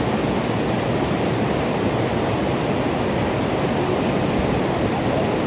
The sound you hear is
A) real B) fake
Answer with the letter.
A